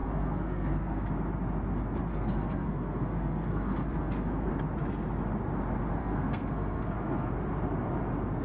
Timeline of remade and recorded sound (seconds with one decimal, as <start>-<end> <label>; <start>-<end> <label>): 0.0-1.1 remade; 1.1-2.1 recorded; 2.1-4.5 remade; 4.5-6.0 recorded; 6.0-7.3 remade; 7.3-8.4 recorded